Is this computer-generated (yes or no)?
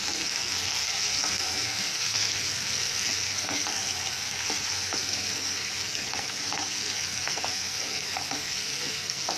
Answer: yes